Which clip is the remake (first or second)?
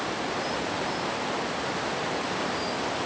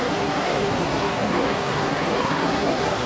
second